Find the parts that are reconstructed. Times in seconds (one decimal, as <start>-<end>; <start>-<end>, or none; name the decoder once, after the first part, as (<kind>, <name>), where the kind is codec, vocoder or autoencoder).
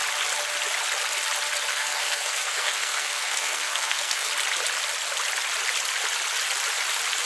1.7-4.3 (codec, SNAC)